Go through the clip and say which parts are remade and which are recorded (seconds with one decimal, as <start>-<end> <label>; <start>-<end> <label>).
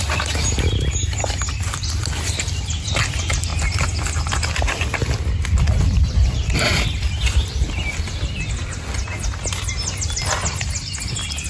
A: 0.0-11.5 recorded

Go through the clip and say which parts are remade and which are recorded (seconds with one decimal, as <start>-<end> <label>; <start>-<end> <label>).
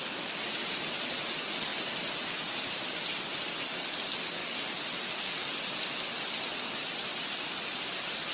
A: 0.0-1.7 recorded; 1.7-2.6 remade; 2.6-7.1 recorded; 7.1-7.9 remade; 7.9-8.3 recorded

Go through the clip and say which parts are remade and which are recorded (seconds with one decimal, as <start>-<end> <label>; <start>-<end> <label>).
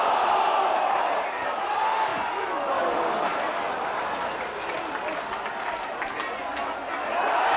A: 0.0-7.6 recorded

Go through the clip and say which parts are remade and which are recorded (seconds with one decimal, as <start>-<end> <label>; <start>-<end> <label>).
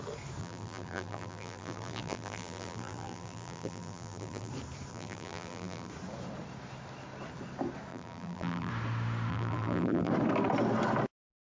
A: 0.0-0.4 recorded; 0.4-4.5 remade; 4.5-4.9 recorded; 4.9-5.9 remade; 5.9-7.9 recorded; 7.9-8.7 remade; 8.7-9.3 recorded; 9.3-10.1 remade; 10.1-11.5 recorded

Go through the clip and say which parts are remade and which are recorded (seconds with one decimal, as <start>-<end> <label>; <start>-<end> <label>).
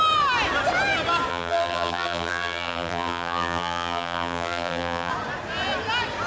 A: 0.0-1.3 recorded; 1.3-5.1 remade; 5.1-6.3 recorded